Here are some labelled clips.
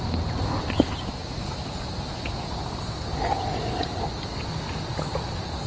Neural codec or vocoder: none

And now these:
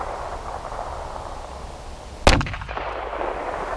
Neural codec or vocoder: none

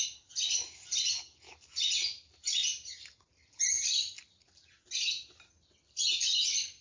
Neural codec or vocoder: none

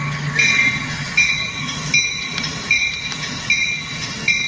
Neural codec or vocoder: none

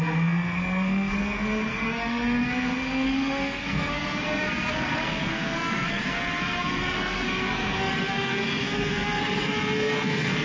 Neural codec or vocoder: codec, SNAC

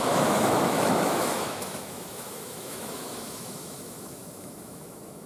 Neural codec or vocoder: autoencoder, DAC-VAE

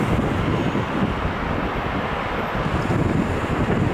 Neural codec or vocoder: none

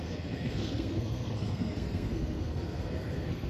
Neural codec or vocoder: codec, SNAC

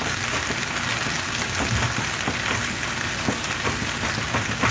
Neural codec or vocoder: none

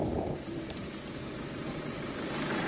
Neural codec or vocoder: none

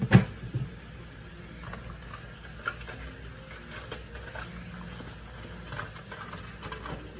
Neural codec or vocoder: none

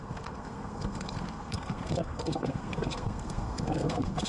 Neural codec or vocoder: codec, SNAC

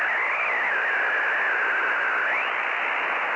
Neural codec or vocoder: none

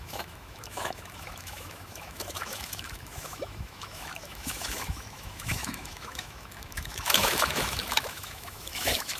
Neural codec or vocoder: autoencoder, DAC-VAE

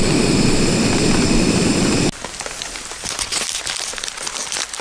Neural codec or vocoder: none